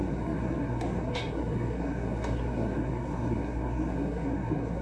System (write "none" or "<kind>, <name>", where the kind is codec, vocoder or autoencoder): codec, SNAC